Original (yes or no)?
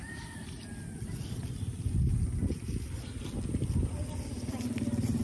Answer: yes